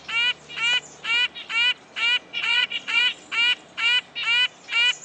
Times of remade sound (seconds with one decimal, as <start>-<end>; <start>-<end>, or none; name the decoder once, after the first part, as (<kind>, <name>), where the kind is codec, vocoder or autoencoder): 2.3-3.0 (vocoder, Vocos)